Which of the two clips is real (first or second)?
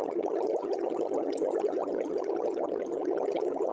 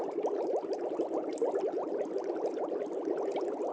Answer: second